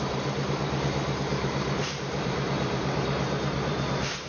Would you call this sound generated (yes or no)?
yes